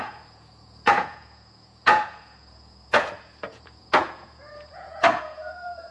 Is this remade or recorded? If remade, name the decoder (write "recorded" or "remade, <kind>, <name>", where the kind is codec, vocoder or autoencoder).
remade, vocoder, Vocos